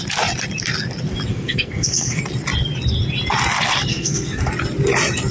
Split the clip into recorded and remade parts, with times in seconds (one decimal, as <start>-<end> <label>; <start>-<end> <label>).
0.0-1.3 recorded; 1.3-2.2 remade; 2.2-3.9 recorded; 3.9-4.5 remade; 4.5-5.3 recorded